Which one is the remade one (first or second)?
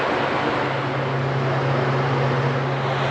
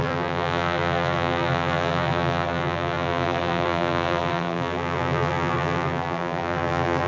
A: second